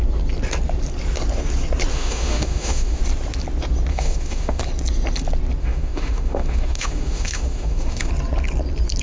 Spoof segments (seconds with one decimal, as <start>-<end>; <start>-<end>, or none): 1.9-3.0; 3.9-4.6; 5.6-8.1